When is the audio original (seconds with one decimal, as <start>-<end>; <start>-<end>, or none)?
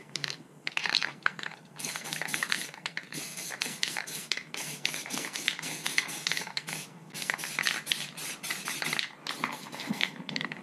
7.5-9.5